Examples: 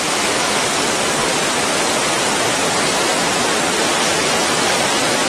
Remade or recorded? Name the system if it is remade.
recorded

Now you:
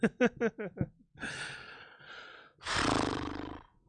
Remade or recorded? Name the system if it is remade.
recorded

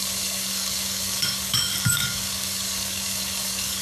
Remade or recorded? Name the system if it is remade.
remade, codec, DAC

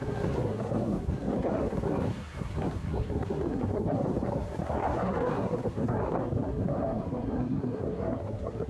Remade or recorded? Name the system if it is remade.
remade, codec, SNAC